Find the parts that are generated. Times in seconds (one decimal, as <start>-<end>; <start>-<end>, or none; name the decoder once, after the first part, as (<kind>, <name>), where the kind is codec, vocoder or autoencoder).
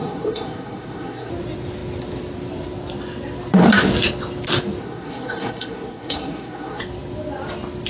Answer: 0.0-1.3 (codec, SNAC); 4.8-6.8